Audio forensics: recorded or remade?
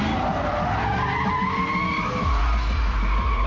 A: recorded